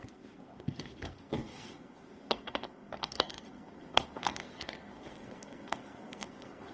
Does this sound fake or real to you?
fake